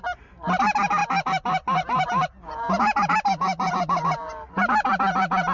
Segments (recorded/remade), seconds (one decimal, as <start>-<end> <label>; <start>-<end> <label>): 0.0-5.5 recorded